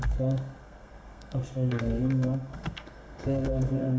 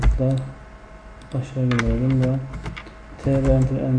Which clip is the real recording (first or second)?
second